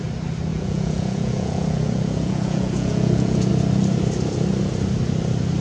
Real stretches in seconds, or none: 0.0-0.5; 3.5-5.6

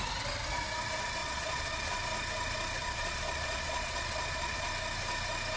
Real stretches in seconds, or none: 0.0-1.2; 1.9-2.8; 4.7-5.6